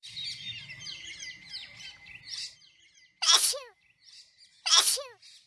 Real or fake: real